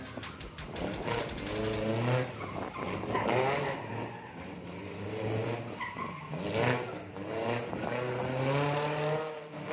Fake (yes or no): no